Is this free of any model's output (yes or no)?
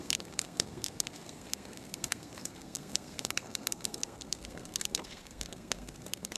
no